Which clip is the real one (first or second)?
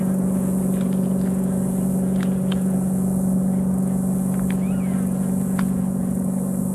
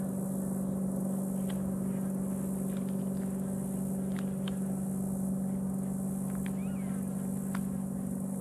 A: second